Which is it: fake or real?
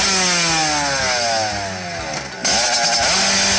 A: real